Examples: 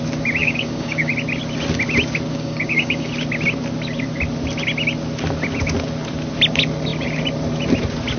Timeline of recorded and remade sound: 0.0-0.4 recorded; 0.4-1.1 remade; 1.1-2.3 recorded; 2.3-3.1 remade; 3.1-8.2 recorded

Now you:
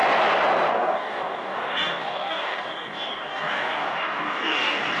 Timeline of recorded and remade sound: 0.0-0.7 recorded; 0.7-5.0 remade

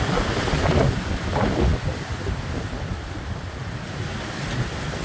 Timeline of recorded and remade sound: 0.0-5.0 recorded